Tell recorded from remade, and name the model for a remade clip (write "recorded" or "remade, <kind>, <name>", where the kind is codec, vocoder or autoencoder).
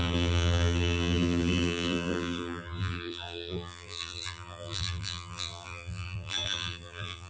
remade, vocoder, BigVGAN v2